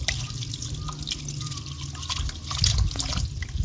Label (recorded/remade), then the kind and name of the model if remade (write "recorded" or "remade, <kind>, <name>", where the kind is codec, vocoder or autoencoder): recorded